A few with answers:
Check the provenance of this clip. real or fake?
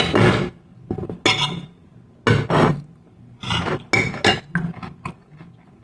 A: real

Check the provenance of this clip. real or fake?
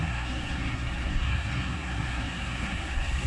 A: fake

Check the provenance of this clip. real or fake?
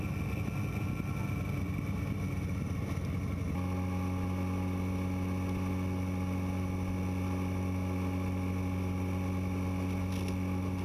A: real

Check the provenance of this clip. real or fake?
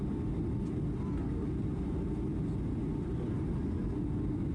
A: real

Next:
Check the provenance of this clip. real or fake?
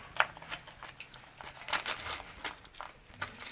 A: real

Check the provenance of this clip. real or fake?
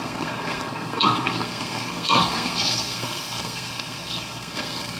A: fake